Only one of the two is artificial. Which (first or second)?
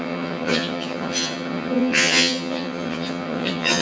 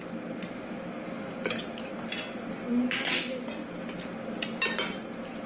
first